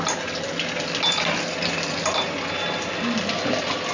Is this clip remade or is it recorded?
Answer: recorded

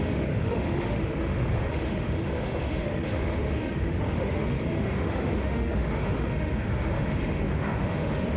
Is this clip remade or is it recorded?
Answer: remade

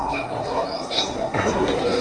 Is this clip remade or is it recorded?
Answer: remade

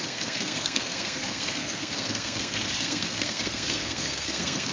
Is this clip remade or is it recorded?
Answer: remade